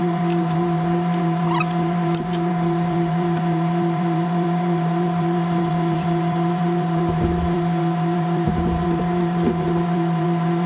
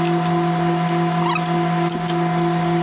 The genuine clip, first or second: second